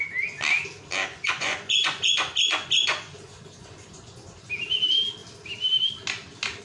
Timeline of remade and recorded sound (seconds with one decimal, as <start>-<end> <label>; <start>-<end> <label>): 0.0-1.1 recorded; 1.1-4.5 remade; 4.5-6.6 recorded